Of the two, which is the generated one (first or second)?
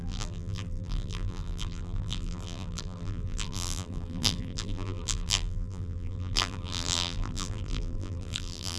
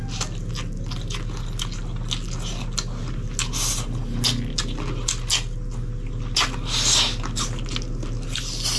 first